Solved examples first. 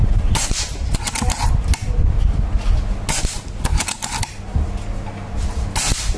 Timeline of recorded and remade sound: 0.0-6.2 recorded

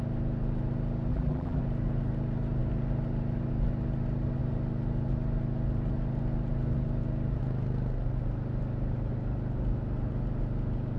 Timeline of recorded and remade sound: 0.0-1.1 recorded; 1.1-1.6 remade; 1.6-11.0 recorded

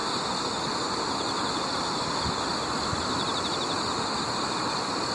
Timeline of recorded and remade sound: 0.0-5.1 recorded